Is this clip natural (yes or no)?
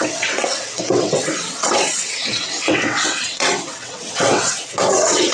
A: no